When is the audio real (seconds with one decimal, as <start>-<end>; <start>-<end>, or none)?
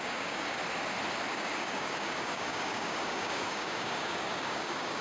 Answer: 0.6-1.3